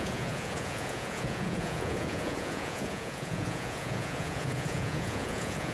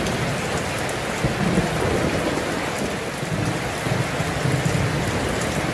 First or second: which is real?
second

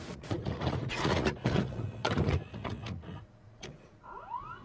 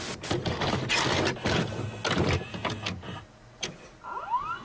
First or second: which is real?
second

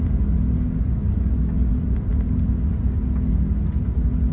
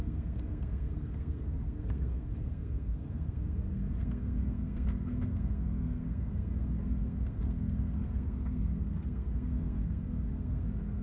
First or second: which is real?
first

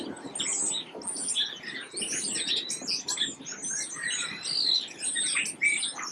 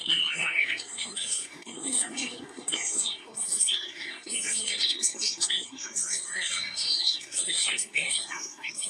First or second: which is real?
first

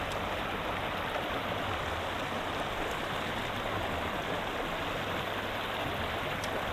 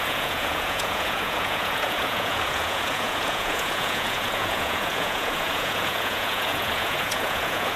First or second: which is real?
first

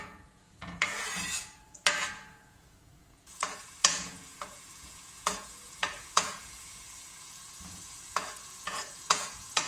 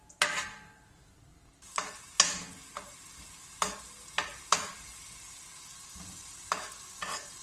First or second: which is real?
second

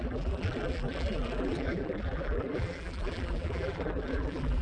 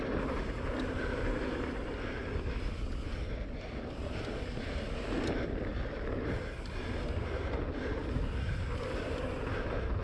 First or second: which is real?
second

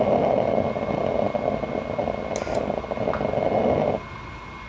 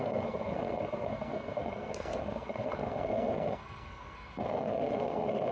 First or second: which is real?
first